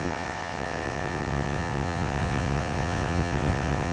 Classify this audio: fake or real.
fake